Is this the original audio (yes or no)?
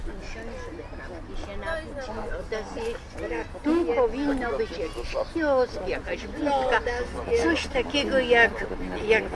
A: yes